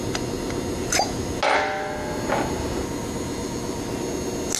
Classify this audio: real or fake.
real